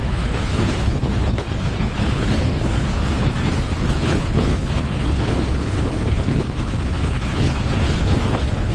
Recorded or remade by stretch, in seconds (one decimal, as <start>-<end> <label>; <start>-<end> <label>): 0.0-8.7 remade